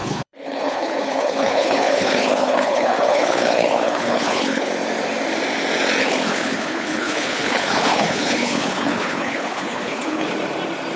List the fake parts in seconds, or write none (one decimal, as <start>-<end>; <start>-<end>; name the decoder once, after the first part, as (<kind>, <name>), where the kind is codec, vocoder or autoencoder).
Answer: 0.0-4.7 (codec, HILCodec); 6.0-10.3